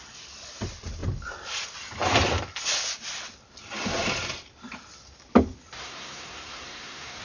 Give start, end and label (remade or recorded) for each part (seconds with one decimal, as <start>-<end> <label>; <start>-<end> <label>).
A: 0.0-5.8 recorded; 5.8-7.2 remade